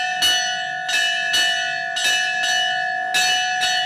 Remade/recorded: recorded